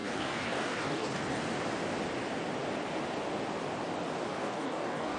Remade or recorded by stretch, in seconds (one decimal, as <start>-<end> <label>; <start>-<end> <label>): 0.0-1.4 remade; 1.4-4.3 recorded; 4.3-5.2 remade